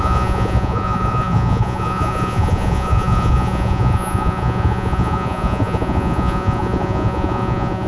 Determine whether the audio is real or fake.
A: fake